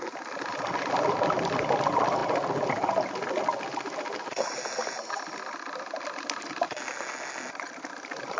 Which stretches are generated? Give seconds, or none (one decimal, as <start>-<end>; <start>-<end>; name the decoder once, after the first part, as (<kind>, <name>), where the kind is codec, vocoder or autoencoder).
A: none